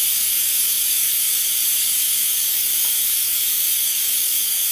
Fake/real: fake